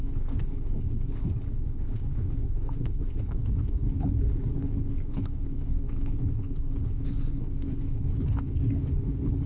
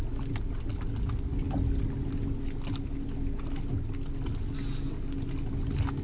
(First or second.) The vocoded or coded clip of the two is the first